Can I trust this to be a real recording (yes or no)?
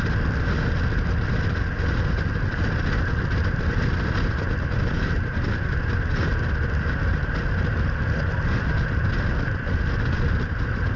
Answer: yes